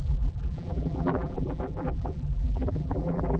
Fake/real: fake